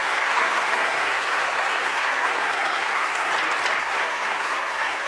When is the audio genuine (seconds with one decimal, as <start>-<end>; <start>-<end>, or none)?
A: 3.3-3.8